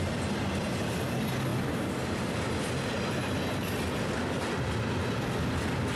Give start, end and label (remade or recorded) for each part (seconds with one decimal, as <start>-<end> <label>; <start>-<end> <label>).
0.0-6.0 recorded